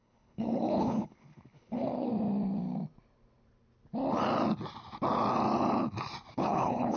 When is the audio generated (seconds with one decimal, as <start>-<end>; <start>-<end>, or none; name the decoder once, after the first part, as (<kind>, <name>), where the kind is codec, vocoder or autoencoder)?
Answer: 0.0-2.1 (codec, HILCodec); 6.3-7.0

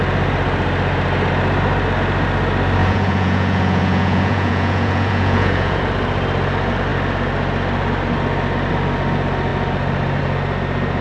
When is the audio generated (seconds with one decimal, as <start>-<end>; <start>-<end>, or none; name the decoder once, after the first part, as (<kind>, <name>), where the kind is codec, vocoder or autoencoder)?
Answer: 2.8-5.8 (vocoder, Vocos)

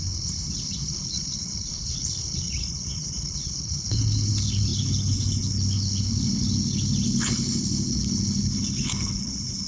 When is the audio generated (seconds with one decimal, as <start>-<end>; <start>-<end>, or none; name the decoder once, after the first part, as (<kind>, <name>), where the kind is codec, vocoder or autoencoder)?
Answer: 0.0-9.7 (codec, HILCodec)

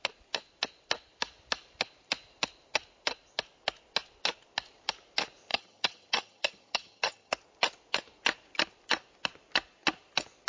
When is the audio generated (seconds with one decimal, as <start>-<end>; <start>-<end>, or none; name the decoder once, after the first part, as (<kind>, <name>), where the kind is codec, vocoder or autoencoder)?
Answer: 5.5-7.3 (vocoder, HiFi-GAN)

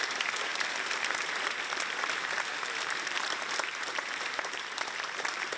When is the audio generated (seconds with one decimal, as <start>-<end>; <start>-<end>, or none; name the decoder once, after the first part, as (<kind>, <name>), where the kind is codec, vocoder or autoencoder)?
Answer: 0.0-5.6 (vocoder, BigVGAN v2)

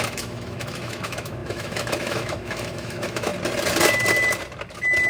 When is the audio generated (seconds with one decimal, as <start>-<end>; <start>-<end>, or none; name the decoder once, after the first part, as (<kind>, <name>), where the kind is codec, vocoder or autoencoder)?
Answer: 0.0-3.3 (autoencoder, DAC-VAE)

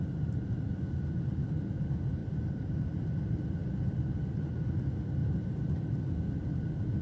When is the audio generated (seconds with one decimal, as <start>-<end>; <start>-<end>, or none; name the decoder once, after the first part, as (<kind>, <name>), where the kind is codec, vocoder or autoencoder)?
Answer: 2.2-2.9 (vocoder, BigVGAN v2); 5.2-5.7

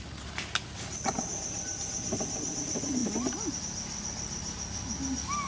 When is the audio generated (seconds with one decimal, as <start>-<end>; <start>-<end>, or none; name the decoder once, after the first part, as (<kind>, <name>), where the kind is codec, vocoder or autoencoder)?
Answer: none